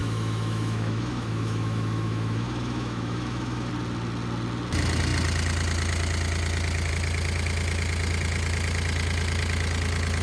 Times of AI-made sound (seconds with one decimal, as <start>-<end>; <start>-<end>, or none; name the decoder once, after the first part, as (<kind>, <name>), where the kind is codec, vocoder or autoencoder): 0.0-3.7 (autoencoder, DAC-VAE)